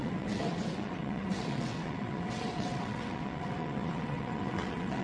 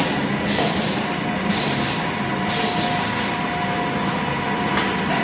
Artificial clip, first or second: first